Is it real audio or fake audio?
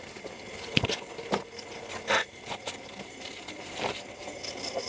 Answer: real